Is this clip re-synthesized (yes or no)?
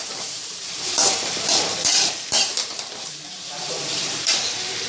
yes